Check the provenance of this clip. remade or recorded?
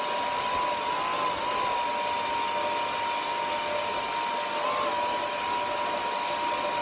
recorded